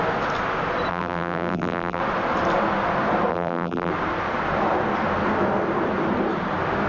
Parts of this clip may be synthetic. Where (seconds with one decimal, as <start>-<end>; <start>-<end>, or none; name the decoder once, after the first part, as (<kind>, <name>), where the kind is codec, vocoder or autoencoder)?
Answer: 0.9-2.0 (vocoder, BigVGAN v2); 3.3-3.9